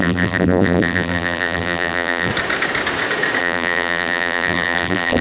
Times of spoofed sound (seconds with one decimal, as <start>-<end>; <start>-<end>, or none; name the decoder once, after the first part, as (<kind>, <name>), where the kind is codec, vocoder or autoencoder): 0.0-2.3 (vocoder, BigVGAN v2); 3.4-5.2